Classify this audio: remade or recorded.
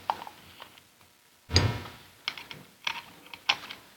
recorded